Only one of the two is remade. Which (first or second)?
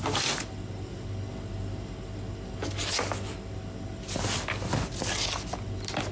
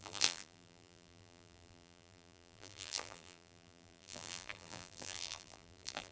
second